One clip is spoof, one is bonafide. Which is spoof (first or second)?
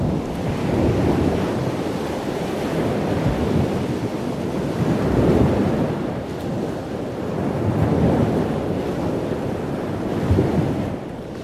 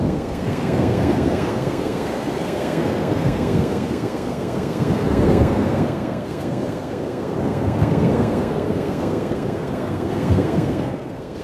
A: second